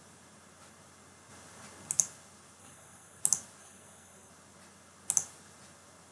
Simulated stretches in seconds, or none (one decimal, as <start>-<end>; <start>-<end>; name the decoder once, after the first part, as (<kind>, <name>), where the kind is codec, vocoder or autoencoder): 2.6-3.2 (codec, SNAC); 3.6-4.3